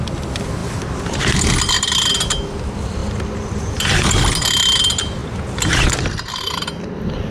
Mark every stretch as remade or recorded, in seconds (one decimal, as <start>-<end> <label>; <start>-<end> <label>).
0.0-7.3 recorded